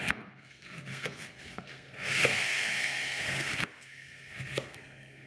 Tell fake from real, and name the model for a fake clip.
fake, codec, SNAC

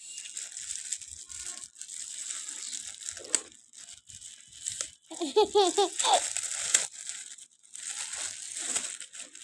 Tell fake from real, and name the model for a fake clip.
real